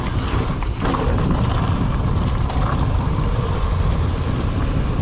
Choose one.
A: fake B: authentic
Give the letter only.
B